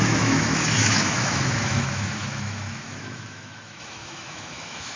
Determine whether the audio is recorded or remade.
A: remade